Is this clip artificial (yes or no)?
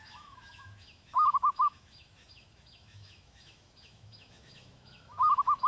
yes